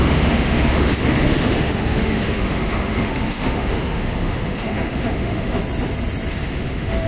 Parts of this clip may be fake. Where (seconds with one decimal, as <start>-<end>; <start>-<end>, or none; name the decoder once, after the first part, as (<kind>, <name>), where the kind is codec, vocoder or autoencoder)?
0.0-5.6 (autoencoder, DAC-VAE); 6.3-7.1